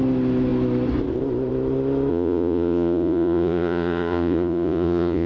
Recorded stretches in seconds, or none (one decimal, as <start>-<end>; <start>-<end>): 0.0-2.1